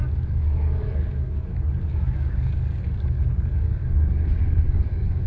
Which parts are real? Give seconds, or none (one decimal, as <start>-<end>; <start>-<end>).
3.8-4.4